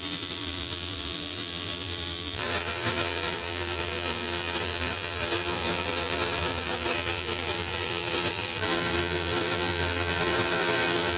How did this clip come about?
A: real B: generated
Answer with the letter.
B